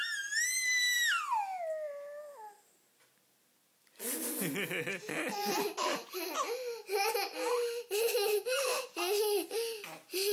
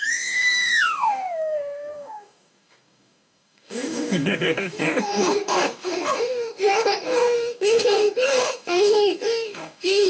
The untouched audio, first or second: first